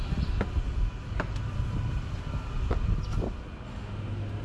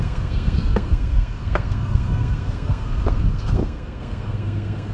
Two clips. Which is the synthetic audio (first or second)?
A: second